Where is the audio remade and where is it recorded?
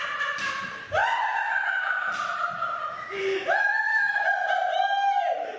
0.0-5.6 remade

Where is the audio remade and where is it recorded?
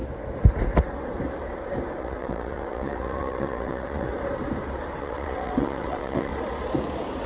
0.0-2.0 recorded; 2.0-4.1 remade; 4.1-5.0 recorded; 5.0-6.3 remade; 6.3-7.3 recorded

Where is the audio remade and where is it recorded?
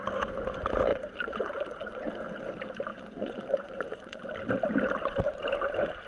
0.0-0.9 recorded; 0.9-2.0 remade; 2.0-2.9 recorded; 2.9-4.2 remade; 4.2-6.1 recorded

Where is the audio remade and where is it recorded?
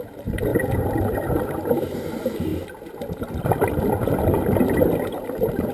0.0-2.5 remade; 2.5-5.1 recorded; 5.1-5.7 remade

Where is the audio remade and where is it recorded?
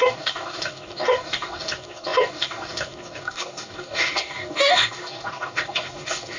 0.0-6.4 remade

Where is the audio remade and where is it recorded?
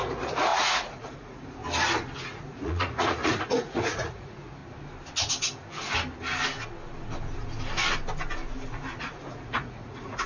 0.0-1.6 remade; 1.6-2.2 recorded; 2.2-4.6 remade; 4.6-9.0 recorded; 9.0-10.3 remade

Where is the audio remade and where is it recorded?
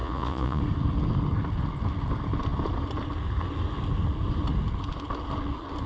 0.0-0.6 remade; 0.6-5.9 recorded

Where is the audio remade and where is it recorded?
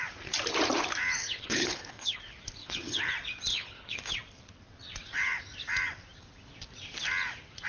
0.0-1.2 recorded; 1.2-2.2 remade; 2.2-2.6 recorded; 2.6-3.1 remade; 3.1-3.5 recorded; 3.5-4.1 remade; 4.1-7.7 recorded